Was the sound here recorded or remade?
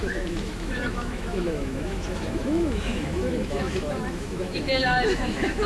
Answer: remade